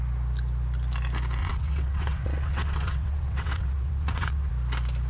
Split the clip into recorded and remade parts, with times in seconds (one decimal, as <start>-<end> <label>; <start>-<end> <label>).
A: 0.0-1.4 recorded; 1.4-4.5 remade; 4.5-5.1 recorded